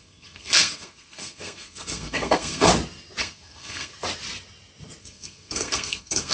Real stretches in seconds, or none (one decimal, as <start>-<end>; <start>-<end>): 2.7-3.2; 3.9-5.0